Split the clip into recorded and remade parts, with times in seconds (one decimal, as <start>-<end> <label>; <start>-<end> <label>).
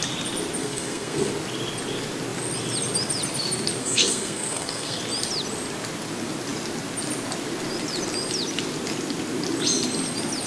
0.0-0.6 recorded; 0.6-1.3 remade; 1.3-3.8 recorded; 3.8-5.0 remade; 5.0-10.5 recorded